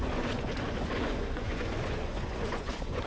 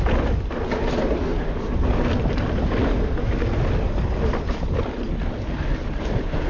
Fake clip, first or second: first